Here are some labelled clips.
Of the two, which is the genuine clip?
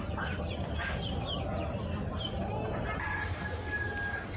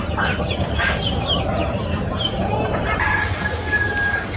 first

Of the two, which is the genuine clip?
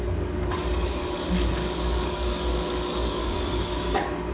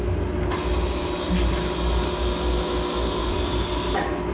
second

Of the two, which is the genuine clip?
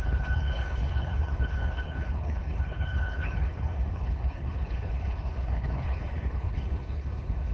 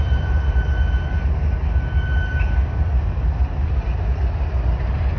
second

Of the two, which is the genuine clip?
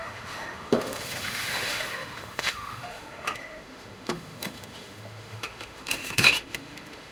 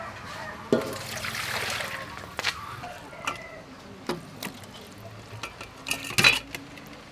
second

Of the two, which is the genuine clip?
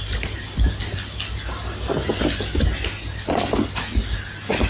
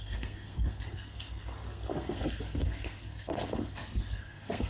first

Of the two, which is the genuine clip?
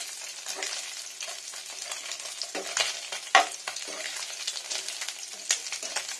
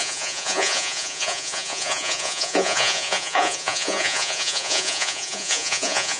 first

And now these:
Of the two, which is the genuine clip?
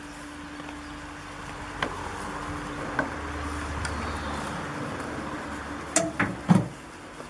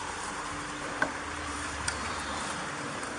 first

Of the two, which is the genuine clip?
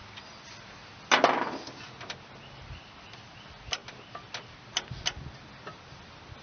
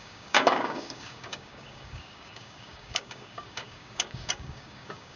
first